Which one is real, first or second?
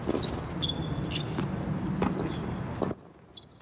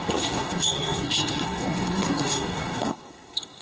first